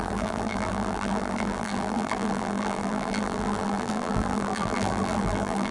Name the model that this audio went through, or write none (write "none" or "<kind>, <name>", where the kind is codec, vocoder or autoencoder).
vocoder, BigVGAN v2